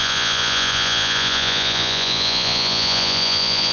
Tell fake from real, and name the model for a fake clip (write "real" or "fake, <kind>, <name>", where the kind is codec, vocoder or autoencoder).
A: fake, vocoder, Vocos